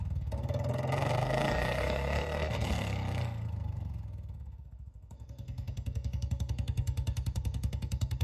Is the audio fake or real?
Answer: fake